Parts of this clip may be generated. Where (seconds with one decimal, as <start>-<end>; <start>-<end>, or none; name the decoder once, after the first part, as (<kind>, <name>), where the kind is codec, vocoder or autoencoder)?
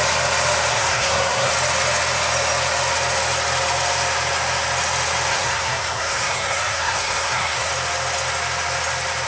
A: 0.7-1.5 (codec, SNAC); 5.3-7.7